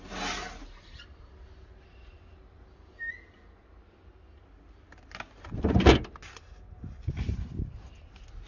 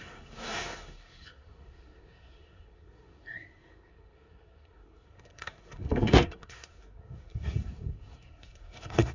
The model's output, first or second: second